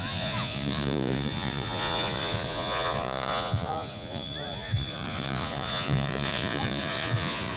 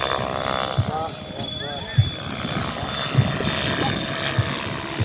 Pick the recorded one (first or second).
second